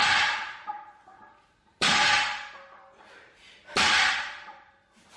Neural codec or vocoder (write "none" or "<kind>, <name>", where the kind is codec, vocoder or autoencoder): none